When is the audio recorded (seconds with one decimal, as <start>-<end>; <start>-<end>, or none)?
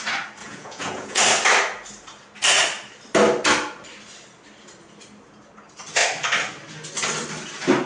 0.0-0.4; 1.2-7.9